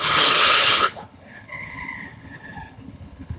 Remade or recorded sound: remade